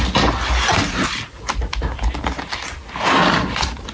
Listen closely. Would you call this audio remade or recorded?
recorded